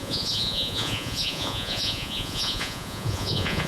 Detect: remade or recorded remade